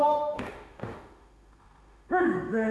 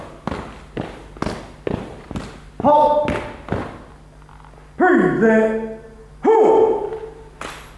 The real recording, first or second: second